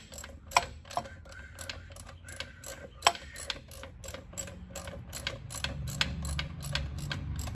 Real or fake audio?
real